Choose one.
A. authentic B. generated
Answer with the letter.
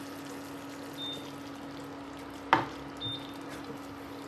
A